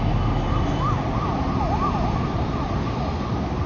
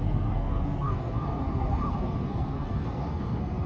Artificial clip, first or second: second